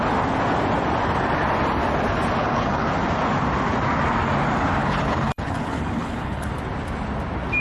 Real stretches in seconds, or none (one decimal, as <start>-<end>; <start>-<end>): 0.0-2.4; 2.9-4.8; 6.5-7.6